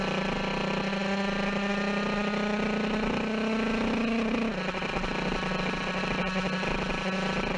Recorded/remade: recorded